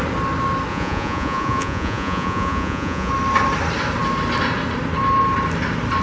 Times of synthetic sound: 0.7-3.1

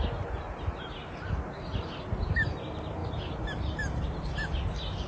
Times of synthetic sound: none

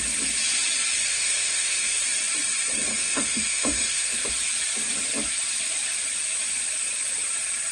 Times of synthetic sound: 1.1-2.0; 2.9-4.3

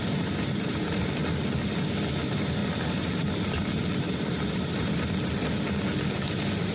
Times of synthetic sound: 0.0-1.2; 2.2-2.6